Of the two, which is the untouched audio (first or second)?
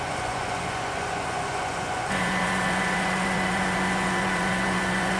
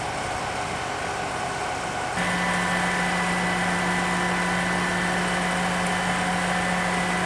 second